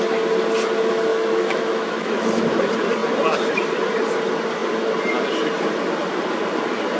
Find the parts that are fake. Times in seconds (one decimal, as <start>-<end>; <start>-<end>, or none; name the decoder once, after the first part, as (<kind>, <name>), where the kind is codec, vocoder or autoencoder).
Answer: 1.1-2.6 (autoencoder, DAC-VAE)